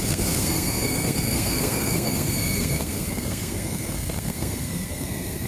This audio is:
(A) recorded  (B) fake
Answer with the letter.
B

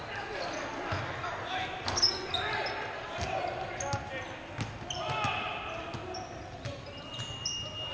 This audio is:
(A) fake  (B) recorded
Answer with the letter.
B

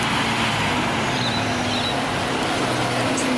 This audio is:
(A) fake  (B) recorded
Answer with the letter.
B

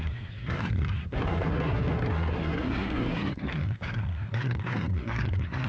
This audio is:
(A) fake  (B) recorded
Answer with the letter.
A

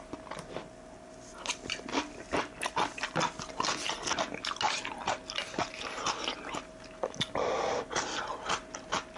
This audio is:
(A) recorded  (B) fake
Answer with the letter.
A